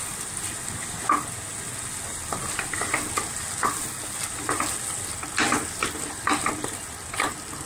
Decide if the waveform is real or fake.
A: real